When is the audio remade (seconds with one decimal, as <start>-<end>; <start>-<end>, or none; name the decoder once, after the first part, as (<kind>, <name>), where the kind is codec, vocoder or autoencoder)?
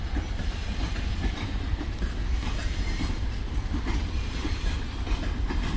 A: 1.1-4.6 (vocoder, BigVGAN v2)